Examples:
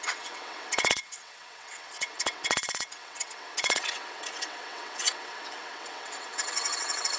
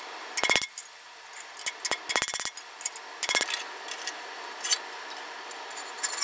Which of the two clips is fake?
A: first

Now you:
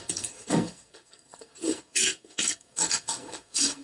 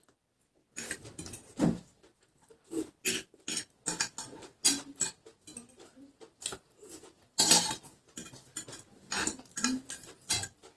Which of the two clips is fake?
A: first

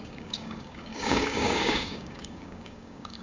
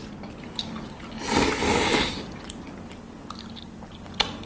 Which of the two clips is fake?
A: first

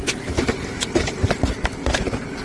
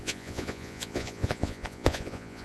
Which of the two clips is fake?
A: second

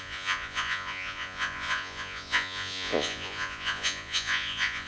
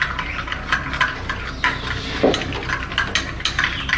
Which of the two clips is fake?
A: first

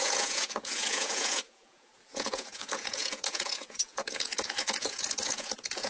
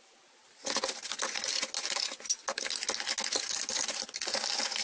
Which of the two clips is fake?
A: first